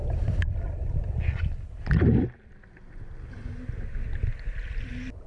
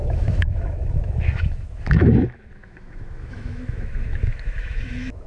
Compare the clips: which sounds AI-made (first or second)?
second